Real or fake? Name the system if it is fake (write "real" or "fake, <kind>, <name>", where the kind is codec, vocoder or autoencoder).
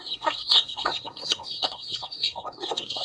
fake, codec, SNAC